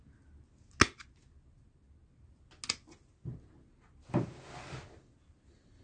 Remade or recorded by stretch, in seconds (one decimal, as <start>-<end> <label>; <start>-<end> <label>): 0.0-5.8 recorded